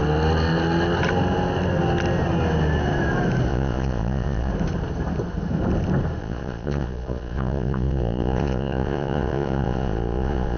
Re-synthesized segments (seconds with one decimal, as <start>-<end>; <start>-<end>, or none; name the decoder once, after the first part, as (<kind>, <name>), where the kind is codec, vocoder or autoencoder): 3.5-4.5 (vocoder, Vocos); 6.2-10.6